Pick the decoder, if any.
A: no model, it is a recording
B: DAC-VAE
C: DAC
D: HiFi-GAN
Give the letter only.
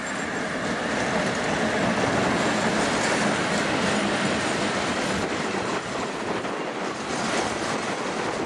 A